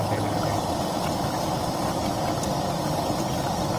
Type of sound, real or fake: real